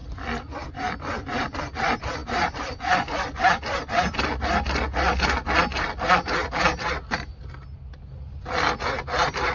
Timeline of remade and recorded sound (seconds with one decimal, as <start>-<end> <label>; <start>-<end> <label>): 0.0-9.5 recorded